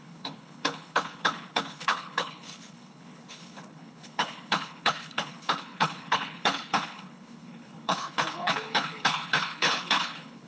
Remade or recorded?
remade